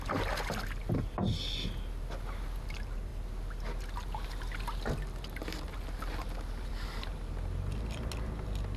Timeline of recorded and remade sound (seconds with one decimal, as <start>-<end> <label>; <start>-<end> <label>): 0.0-8.8 recorded